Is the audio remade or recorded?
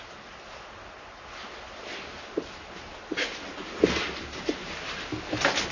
recorded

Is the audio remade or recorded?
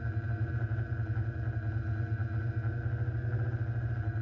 recorded